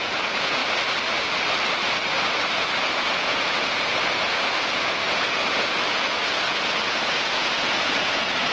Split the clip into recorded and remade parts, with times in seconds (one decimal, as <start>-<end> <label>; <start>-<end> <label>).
0.0-0.6 remade; 0.6-2.8 recorded; 2.8-8.5 remade